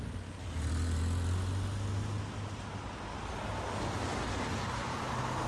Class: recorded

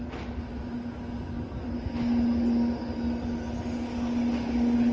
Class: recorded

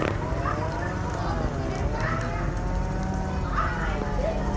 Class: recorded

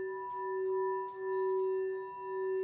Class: recorded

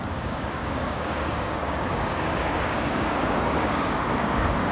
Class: remade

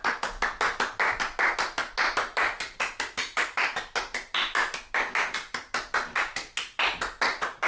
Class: recorded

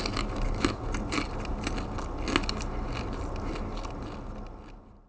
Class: recorded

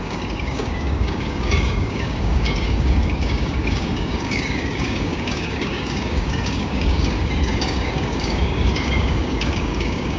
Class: remade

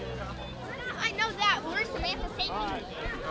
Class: recorded